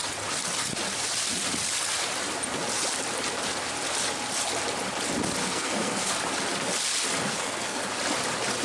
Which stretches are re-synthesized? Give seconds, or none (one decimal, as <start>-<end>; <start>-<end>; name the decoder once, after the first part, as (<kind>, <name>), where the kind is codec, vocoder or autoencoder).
5.4-6.1 (codec, SNAC); 7.3-7.8